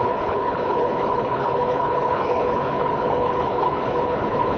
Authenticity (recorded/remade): remade